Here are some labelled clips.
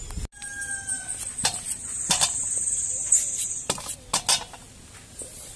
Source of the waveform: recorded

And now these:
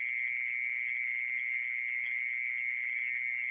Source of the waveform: recorded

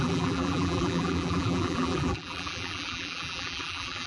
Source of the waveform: remade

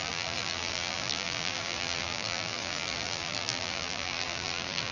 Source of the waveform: remade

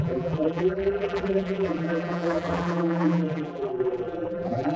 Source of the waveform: remade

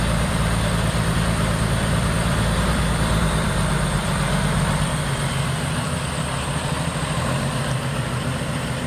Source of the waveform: remade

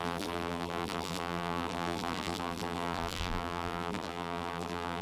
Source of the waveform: remade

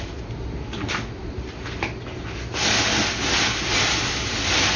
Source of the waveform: recorded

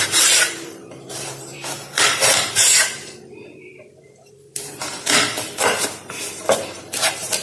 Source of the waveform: remade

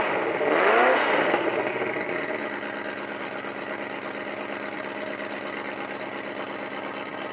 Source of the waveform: recorded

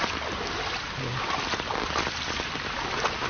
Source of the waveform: recorded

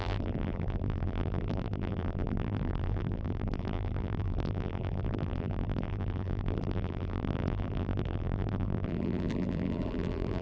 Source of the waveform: remade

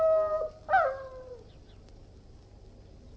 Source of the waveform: recorded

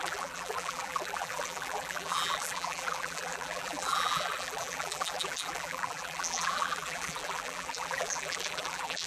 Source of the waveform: remade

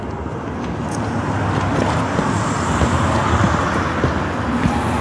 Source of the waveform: recorded